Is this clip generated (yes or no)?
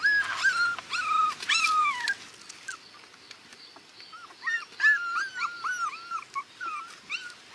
no